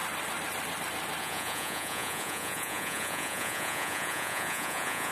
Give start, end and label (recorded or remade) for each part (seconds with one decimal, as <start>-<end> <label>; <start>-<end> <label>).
0.0-1.2 recorded; 1.2-5.1 remade